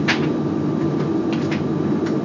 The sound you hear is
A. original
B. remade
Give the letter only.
A